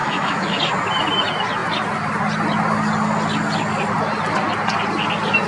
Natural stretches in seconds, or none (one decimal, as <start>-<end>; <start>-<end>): 0.6-5.5